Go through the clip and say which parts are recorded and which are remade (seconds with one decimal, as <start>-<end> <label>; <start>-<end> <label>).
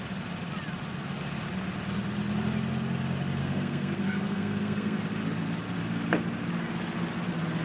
0.0-3.4 recorded; 3.4-5.0 remade; 5.0-7.6 recorded